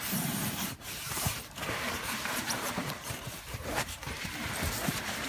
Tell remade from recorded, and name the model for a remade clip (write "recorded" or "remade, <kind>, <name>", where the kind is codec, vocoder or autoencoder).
remade, vocoder, BigVGAN v2